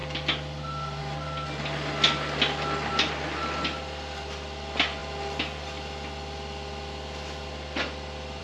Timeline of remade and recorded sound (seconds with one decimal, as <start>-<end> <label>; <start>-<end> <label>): 0.0-1.0 remade; 1.0-8.4 recorded